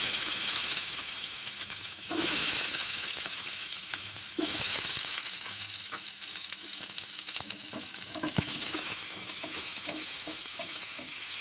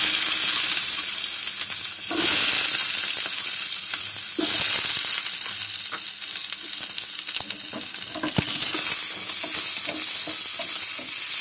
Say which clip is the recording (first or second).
second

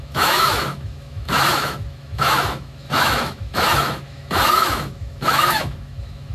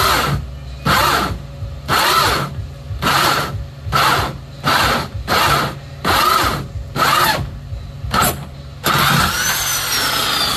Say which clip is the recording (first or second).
second